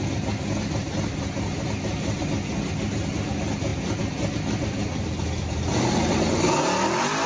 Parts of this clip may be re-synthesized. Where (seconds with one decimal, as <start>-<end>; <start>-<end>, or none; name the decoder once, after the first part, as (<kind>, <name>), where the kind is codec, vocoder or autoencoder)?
none